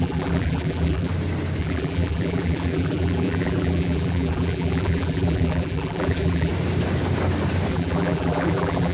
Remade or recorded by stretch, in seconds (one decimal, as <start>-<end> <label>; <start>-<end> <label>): 0.0-1.1 remade; 1.1-1.6 recorded; 1.6-6.5 remade; 6.5-7.7 recorded; 7.7-8.9 remade